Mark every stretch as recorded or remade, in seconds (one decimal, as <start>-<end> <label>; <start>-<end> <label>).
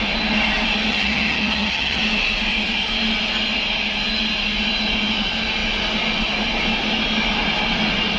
0.0-0.9 recorded; 0.9-2.0 remade; 2.0-8.2 recorded